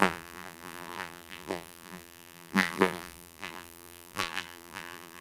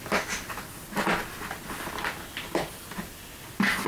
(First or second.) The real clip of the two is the second